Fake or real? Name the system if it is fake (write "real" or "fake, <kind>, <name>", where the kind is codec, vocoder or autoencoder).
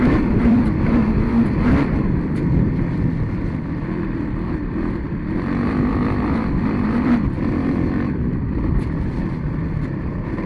fake, vocoder, BigVGAN v2